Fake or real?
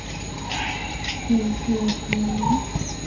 real